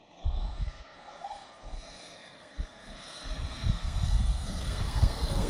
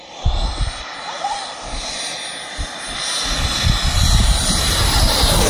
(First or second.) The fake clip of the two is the first